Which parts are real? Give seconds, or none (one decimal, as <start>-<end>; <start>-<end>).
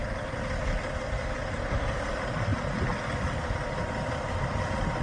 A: 0.8-1.4; 2.1-5.0